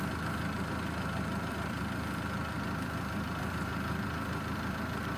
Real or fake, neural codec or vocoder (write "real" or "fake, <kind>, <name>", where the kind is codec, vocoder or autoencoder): fake, vocoder, BigVGAN v2